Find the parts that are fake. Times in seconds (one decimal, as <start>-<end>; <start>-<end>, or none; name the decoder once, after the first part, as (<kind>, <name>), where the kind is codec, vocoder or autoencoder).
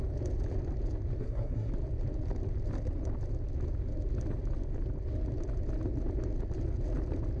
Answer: 1.2-1.7 (codec, SNAC)